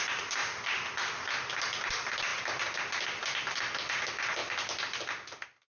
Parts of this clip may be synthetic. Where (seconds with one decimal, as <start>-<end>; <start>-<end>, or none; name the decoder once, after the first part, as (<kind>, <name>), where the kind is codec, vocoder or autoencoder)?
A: none